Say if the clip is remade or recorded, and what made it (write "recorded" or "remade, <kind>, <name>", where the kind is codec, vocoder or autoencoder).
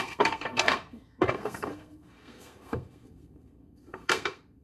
remade, codec, SNAC